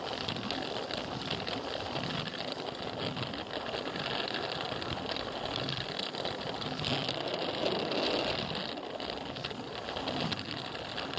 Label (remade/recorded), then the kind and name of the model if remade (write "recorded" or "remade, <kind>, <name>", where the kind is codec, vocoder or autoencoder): recorded